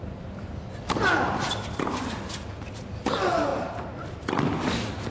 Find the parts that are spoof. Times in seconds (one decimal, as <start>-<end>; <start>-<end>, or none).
none